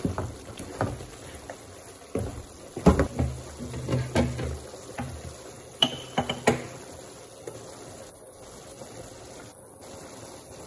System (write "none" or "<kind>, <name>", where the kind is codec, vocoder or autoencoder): none